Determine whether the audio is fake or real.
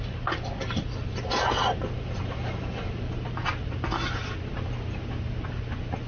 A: real